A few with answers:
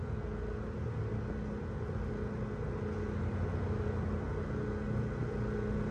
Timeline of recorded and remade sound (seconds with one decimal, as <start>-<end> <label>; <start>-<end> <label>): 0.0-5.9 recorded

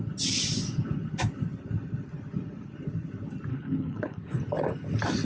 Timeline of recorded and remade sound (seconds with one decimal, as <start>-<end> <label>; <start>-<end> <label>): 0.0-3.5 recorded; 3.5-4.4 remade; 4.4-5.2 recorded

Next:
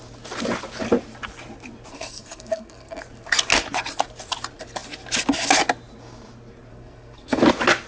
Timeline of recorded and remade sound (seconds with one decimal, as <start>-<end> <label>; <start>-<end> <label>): 0.0-1.9 recorded; 1.9-2.9 remade; 2.9-6.7 recorded; 6.7-7.4 remade; 7.4-7.9 recorded

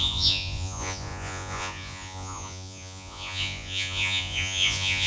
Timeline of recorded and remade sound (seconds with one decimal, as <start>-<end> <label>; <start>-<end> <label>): 0.0-5.1 remade